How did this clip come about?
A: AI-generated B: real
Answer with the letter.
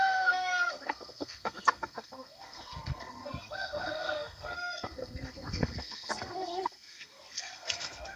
A